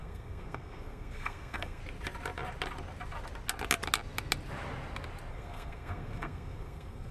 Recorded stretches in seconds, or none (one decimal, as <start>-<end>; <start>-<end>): 1.8-5.3